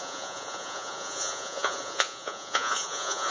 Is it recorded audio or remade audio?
remade